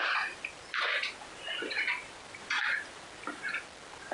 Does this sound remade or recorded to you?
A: recorded